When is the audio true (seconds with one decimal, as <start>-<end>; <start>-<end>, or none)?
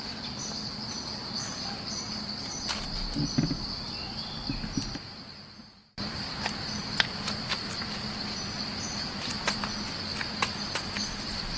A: 0.0-5.6; 6.4-11.6